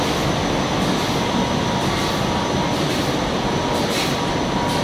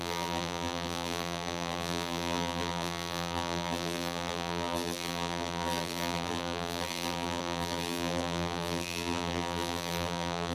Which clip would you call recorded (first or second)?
first